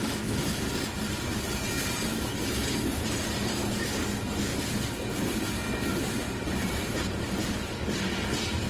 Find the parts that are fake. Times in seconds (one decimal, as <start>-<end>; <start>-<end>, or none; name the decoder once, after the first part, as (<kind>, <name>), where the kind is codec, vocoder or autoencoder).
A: 5.9-6.9 (vocoder, BigVGAN v2)